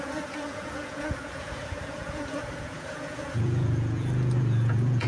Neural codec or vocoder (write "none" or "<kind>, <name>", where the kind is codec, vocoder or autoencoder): vocoder, Vocos